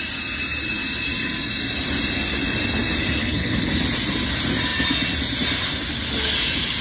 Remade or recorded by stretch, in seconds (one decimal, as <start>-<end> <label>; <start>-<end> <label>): 0.0-3.2 recorded; 3.2-3.7 remade; 3.7-6.8 recorded